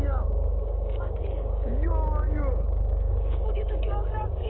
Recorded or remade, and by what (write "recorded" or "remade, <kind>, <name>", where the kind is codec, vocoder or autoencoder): remade, codec, DAC